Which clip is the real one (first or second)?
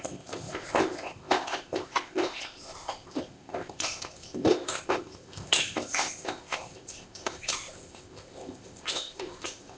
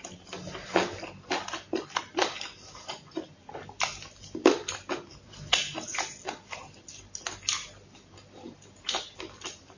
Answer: second